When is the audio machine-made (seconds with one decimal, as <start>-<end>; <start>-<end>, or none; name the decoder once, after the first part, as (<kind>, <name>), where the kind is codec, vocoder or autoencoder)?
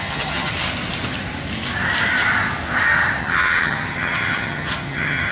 0.0-0.5 (vocoder, HiFi-GAN); 3.2-5.3